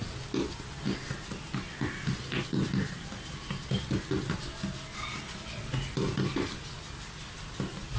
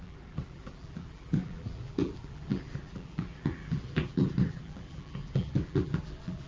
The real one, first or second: first